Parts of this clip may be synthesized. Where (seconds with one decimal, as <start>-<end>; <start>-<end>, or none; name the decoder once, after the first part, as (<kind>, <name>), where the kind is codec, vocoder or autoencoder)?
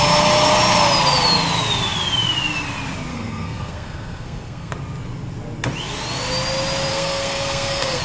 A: 3.1-4.7 (codec, SNAC); 6.9-8.0